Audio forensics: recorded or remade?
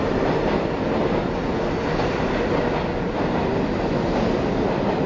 recorded